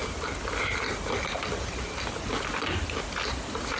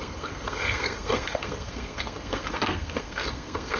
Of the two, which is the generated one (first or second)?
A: second